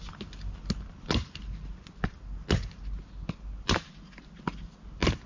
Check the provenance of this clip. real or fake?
real